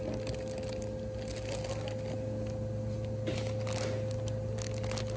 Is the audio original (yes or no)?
yes